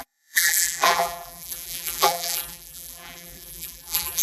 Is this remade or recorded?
remade